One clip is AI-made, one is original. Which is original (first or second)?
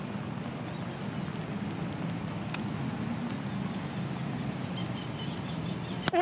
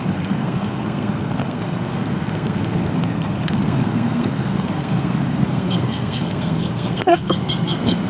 first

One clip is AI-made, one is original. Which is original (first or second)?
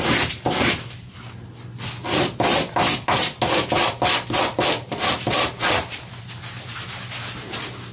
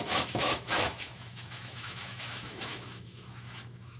first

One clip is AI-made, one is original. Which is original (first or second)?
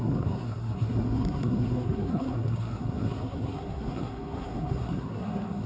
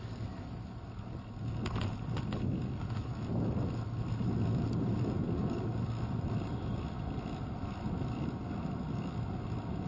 second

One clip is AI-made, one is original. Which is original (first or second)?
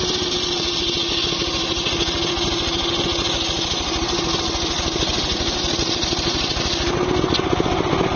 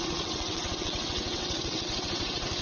first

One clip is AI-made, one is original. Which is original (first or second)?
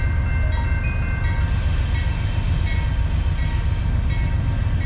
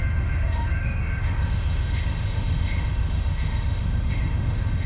first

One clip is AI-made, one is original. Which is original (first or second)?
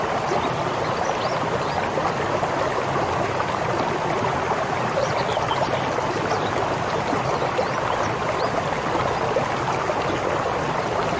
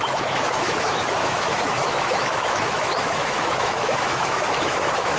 first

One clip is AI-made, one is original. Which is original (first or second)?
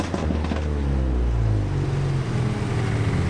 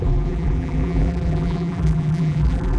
first